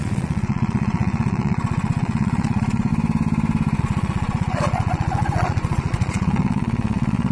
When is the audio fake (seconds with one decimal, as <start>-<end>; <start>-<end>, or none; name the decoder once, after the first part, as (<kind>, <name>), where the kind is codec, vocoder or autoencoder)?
0.0-2.9 (vocoder, Vocos); 3.8-7.3